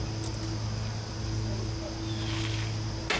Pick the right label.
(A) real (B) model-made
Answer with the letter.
A